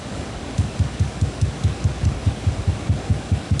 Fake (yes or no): yes